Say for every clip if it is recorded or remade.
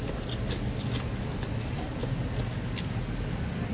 recorded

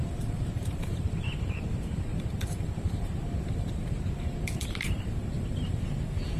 remade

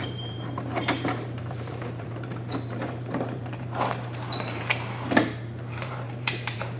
remade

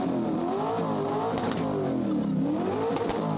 recorded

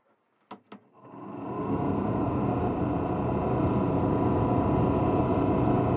recorded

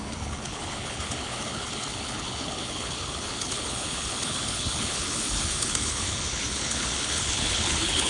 remade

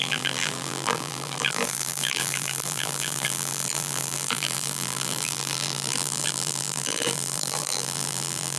remade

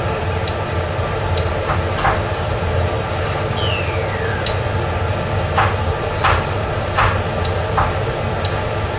recorded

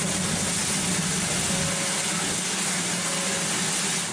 recorded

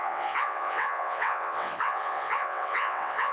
remade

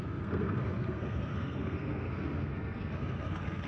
remade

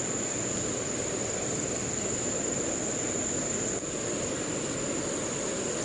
recorded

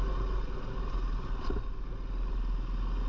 recorded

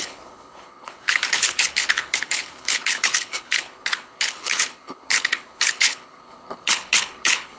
remade